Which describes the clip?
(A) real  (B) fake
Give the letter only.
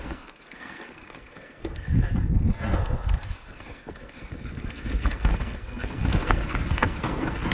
B